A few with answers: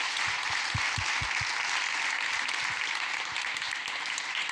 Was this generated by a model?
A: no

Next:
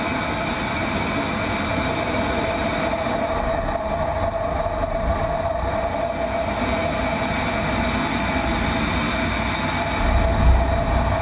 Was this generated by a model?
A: no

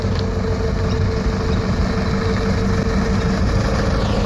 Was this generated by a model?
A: no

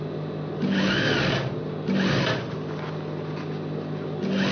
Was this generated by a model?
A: no